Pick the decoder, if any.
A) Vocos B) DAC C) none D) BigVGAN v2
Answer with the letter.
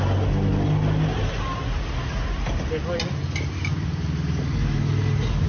C